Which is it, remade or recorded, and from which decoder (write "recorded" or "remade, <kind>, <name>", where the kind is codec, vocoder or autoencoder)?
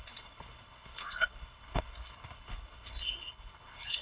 remade, codec, HILCodec